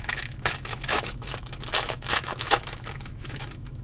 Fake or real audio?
fake